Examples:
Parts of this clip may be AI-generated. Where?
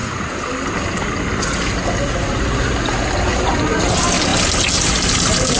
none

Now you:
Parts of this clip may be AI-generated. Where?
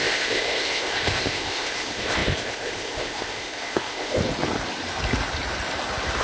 0.0-4.2 (codec, ZipCodec)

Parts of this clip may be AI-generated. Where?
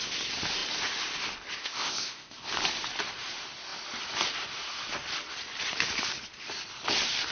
1.6-2.5 (codec, ZipCodec)